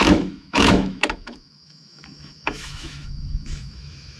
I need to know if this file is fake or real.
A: fake